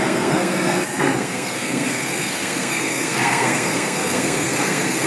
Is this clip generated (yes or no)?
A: yes